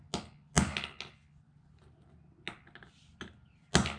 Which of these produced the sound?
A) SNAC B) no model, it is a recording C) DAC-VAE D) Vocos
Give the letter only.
B